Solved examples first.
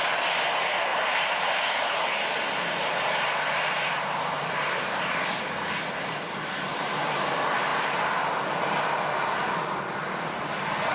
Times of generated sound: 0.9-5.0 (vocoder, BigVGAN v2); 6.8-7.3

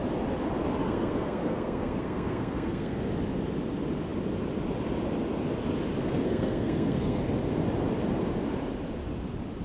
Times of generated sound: 0.8-3.1 (codec, SNAC); 6.0-7.2

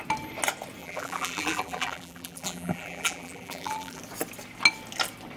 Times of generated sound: 0.8-4.0 (vocoder, BigVGAN v2)

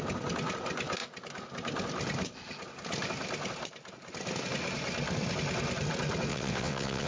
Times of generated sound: 6.3-7.1 (vocoder, WaveNeXt)

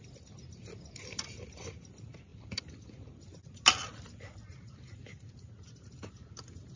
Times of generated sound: none

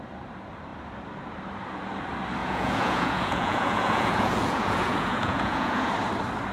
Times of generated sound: 2.4-5.9 (vocoder, Vocos)

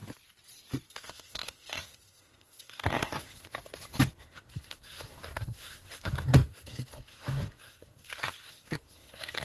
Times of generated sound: 0.9-3.5 (codec, SNAC); 4.1-9.4

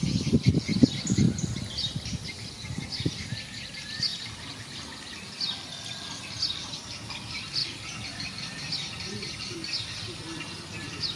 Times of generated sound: none